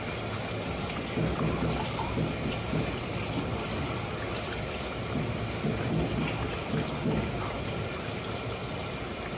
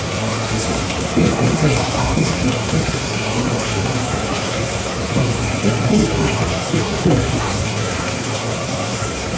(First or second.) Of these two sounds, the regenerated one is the second